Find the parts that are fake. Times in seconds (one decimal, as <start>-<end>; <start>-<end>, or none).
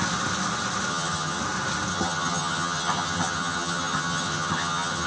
0.9-1.4; 1.9-5.1